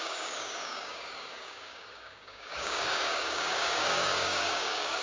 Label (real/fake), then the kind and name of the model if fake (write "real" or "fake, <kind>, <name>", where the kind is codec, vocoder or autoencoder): fake, codec, DAC